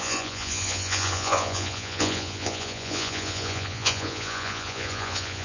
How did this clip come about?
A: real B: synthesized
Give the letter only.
B